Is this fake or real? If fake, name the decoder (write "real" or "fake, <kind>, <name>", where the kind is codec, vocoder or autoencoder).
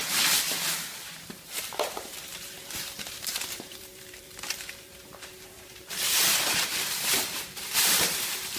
fake, vocoder, BigVGAN v2